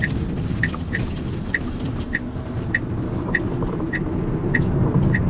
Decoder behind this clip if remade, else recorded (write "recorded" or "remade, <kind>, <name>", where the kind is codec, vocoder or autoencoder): recorded